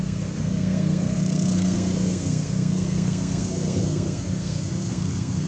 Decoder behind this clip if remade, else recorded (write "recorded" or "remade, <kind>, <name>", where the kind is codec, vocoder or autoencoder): remade, codec, SNAC